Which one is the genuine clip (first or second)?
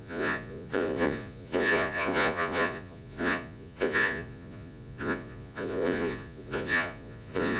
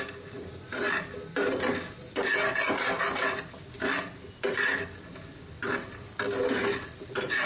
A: second